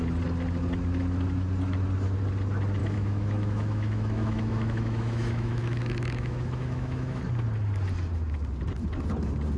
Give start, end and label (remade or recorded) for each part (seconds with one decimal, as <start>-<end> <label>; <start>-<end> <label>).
0.0-2.8 recorded; 2.8-7.2 remade; 7.2-9.6 recorded